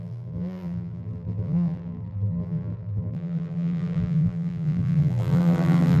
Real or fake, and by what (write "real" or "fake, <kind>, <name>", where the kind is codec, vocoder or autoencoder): fake, vocoder, BigVGAN v2